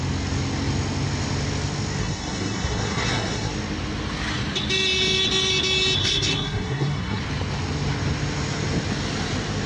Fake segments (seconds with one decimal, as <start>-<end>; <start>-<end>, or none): 2.0-3.5; 6.0-7.2

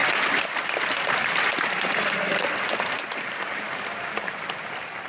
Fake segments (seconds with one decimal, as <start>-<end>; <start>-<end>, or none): none

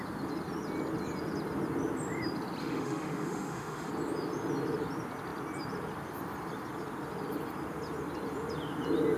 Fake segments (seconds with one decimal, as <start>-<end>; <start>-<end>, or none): 2.6-3.9

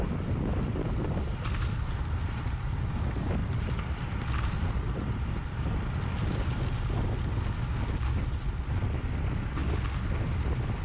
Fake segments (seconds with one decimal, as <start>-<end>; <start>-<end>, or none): none

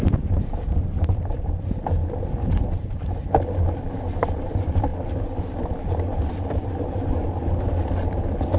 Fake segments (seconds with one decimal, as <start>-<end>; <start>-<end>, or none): 0.0-2.0; 4.3-4.9; 6.2-7.2

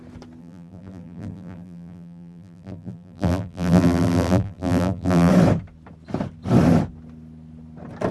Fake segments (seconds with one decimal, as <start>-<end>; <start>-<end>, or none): 0.4-5.3

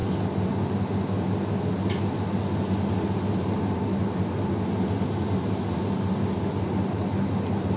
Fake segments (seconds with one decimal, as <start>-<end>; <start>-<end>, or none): none

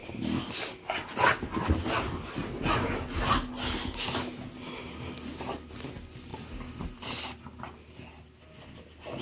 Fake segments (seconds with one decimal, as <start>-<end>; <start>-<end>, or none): none